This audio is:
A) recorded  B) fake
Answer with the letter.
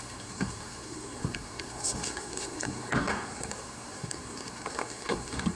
B